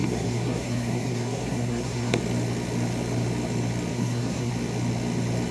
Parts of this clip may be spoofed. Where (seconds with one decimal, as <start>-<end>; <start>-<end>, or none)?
0.0-2.2; 3.9-4.5